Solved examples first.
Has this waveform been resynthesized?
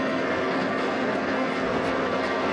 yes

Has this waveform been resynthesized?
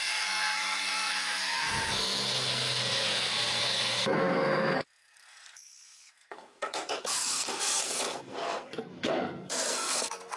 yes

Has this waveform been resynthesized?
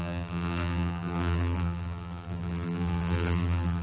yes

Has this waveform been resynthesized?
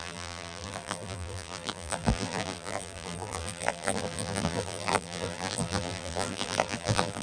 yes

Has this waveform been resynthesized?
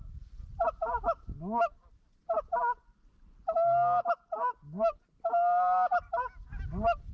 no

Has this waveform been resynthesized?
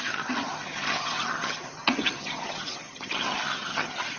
yes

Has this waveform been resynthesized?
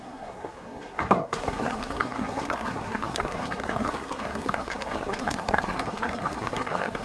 yes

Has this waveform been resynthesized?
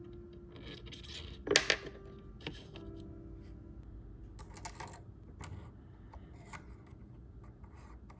no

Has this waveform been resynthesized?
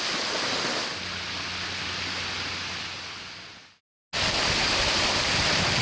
no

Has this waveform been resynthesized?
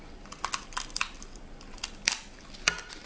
no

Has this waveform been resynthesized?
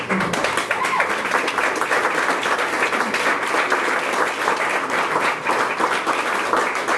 no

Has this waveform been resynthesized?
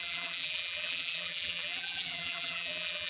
yes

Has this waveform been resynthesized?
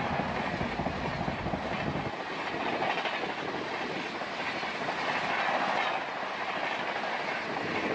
no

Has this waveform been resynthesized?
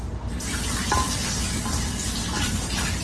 no